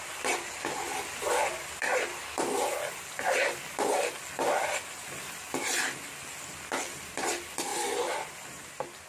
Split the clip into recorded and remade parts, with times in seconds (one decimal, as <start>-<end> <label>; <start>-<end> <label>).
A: 0.0-9.1 recorded